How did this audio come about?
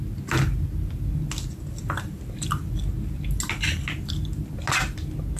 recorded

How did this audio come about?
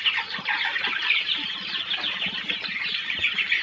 recorded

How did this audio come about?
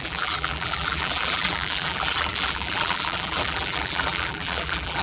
remade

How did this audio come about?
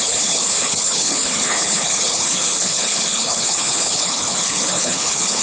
remade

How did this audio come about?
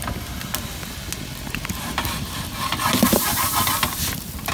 recorded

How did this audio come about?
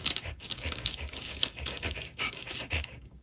remade